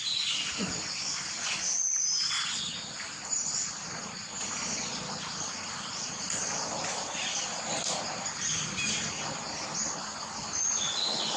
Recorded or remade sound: recorded